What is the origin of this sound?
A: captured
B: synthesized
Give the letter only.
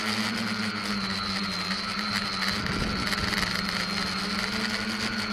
A